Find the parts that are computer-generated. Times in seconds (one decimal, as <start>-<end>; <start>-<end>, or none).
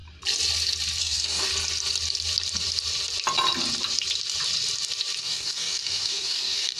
1.0-1.5; 5.2-6.8